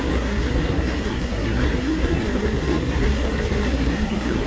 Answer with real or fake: fake